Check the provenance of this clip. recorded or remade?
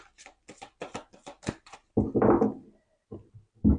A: recorded